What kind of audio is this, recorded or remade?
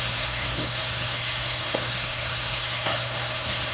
remade